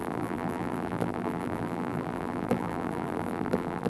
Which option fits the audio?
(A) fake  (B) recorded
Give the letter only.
A